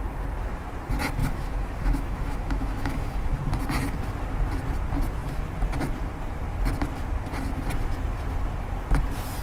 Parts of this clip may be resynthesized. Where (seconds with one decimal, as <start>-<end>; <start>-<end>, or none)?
1.2-3.4